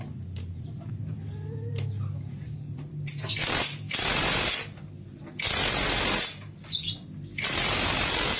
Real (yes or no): yes